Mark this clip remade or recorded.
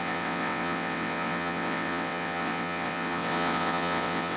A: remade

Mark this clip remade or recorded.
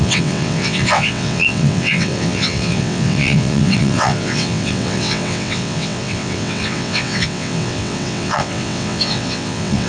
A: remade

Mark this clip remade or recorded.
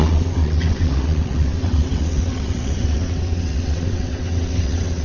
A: remade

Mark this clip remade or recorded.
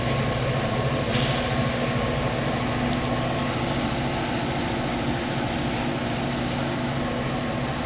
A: recorded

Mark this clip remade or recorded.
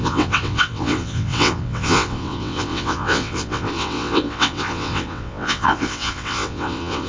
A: remade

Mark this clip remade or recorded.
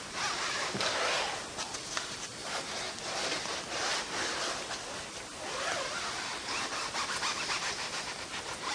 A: recorded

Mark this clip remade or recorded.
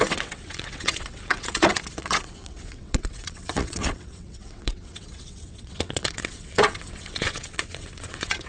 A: remade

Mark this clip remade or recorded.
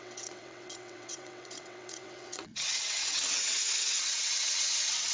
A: remade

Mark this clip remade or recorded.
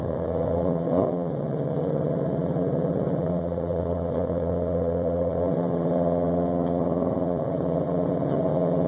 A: remade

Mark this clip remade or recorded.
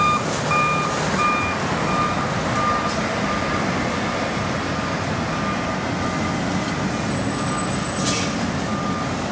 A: recorded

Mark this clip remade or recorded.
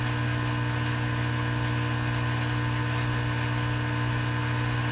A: recorded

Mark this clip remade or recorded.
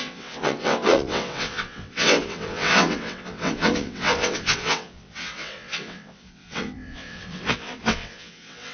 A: remade